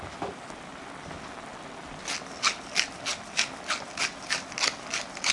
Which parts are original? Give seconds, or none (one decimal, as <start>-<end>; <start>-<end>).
0.0-5.3